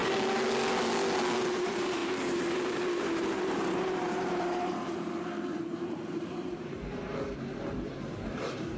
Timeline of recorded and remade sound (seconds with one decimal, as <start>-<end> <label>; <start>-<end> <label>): 0.0-1.5 recorded; 1.5-8.8 remade